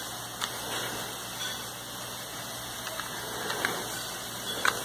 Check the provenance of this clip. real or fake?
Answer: real